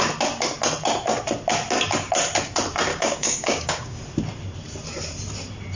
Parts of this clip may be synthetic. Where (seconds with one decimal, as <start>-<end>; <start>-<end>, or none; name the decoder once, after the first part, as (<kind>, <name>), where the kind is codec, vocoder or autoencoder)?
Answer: 2.9-4.0 (codec, DAC)